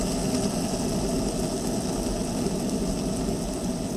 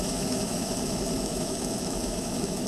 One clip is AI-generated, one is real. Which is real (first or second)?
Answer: first